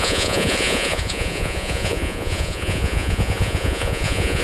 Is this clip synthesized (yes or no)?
yes